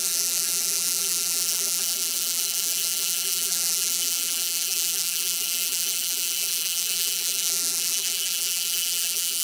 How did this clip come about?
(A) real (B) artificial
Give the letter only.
B